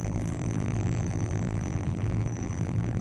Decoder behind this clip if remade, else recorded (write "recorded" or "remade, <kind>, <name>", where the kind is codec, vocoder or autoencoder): remade, vocoder, BigVGAN v2